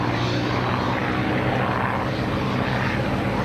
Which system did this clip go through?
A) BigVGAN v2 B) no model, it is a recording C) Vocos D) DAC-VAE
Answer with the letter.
B